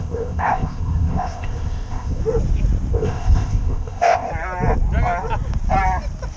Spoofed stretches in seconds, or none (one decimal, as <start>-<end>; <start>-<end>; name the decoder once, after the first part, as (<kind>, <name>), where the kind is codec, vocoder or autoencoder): 0.0-2.2 (codec, ZipCodec); 2.9-4.3